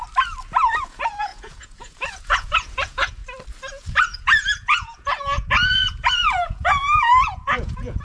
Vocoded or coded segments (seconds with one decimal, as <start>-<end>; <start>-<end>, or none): 0.8-3.2; 3.7-8.0